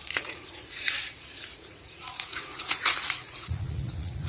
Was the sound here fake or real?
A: fake